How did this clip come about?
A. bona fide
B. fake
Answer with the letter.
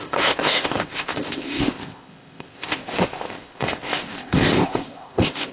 B